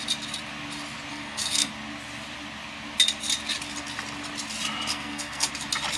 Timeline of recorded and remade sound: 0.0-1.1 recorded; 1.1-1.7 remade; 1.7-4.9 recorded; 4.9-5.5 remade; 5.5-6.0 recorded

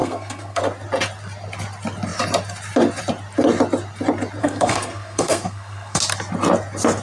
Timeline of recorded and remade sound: 0.0-0.6 remade; 0.6-4.4 recorded; 4.4-6.0 remade; 6.0-7.0 recorded

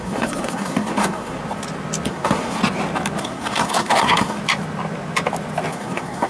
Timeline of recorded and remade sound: 0.0-1.4 remade; 1.4-2.1 recorded; 2.1-2.6 remade; 2.6-3.2 recorded; 3.2-4.4 remade; 4.4-5.7 recorded; 5.7-6.3 remade

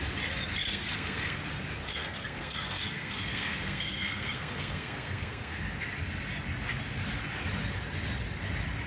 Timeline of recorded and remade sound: 0.0-0.6 recorded; 0.6-1.4 remade; 1.4-1.9 recorded; 1.9-5.6 remade; 5.6-8.9 recorded

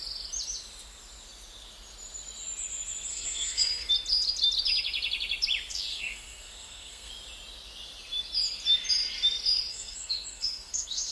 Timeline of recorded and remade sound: 0.0-3.1 recorded; 3.1-3.9 remade; 3.9-5.9 recorded; 5.9-7.1 remade; 7.1-9.7 recorded; 9.7-11.1 remade

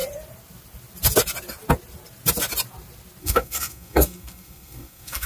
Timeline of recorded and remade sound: 0.0-3.2 recorded; 3.2-5.3 remade